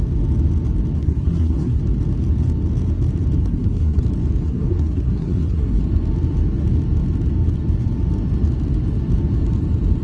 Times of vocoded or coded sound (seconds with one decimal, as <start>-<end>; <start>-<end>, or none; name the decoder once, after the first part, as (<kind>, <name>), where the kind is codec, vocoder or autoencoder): 1.0-1.8 (codec, SNAC); 3.4-4.0; 4.4-5.8